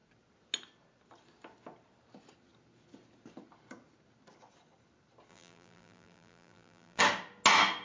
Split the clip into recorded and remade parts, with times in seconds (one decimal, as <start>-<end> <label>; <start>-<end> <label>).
0.0-5.3 recorded; 5.3-7.0 remade; 7.0-7.8 recorded